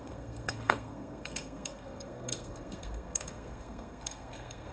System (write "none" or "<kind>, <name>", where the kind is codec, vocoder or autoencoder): codec, SNAC